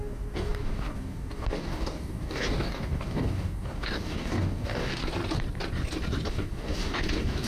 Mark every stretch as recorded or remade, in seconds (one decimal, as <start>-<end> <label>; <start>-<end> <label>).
0.0-5.0 remade; 5.0-6.3 recorded; 6.3-7.5 remade